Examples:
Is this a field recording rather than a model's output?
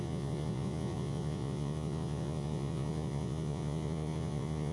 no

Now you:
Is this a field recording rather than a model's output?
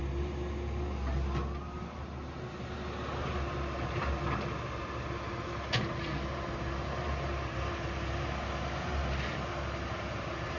yes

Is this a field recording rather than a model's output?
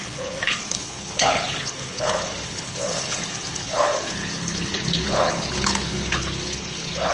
no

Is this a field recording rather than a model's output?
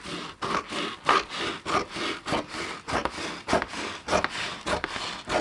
yes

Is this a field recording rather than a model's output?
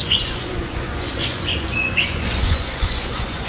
no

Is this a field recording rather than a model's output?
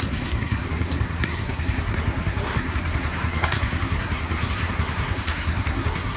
no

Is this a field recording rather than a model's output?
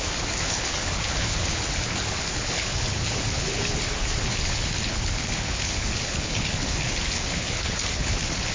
no